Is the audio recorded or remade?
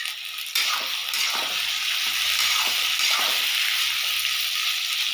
recorded